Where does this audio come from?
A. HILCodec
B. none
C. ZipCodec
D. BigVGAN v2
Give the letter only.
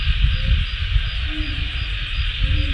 B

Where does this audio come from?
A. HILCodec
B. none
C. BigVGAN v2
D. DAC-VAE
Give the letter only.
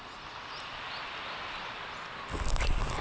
B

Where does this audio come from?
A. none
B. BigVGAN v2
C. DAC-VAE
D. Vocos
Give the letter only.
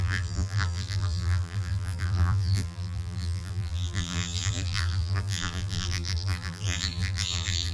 B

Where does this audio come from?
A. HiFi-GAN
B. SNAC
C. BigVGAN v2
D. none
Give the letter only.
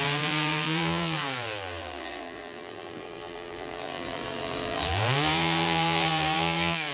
C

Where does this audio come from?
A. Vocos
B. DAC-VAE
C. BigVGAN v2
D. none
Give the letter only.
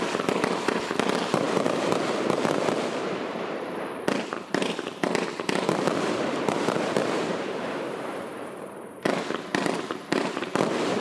C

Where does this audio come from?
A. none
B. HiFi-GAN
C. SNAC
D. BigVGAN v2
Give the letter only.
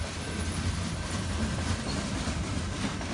D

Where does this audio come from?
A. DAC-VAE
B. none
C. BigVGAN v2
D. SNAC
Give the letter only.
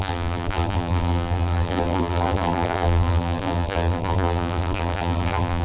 C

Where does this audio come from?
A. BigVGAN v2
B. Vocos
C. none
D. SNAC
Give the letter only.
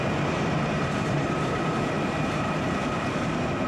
A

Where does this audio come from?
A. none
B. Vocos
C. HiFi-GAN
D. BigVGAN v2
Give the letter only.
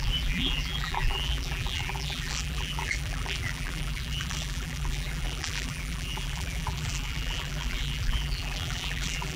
D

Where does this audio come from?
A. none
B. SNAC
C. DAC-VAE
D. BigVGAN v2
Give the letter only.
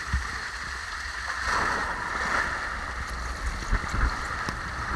A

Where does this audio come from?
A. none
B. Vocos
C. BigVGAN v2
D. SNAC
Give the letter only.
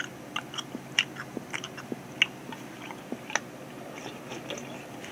A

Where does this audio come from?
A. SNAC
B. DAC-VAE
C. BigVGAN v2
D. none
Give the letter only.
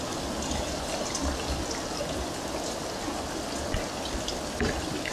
D